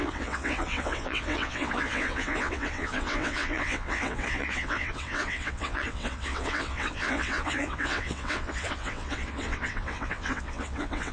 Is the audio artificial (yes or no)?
yes